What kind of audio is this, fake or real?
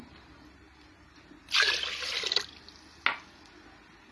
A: real